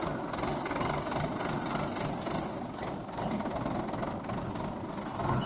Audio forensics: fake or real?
real